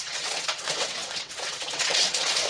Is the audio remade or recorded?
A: remade